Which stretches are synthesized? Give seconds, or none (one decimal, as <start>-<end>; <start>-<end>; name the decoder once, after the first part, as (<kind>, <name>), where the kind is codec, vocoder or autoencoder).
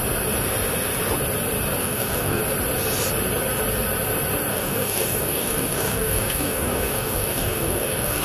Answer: 1.8-2.4 (codec, DAC); 4.5-8.2